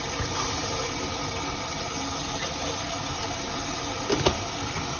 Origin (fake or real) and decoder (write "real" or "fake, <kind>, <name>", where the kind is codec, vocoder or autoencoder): real